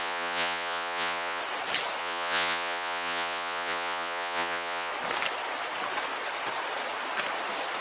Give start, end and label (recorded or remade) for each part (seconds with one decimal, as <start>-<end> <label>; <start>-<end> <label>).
0.0-1.4 remade; 1.4-2.0 recorded; 2.0-4.9 remade; 4.9-7.8 recorded